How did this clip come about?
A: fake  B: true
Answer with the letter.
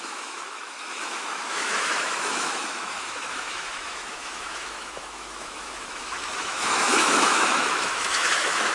A